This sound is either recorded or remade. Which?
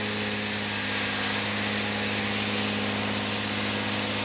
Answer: recorded